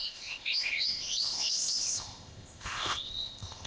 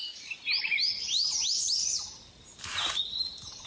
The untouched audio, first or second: second